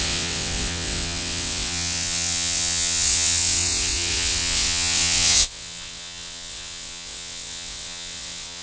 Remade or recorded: remade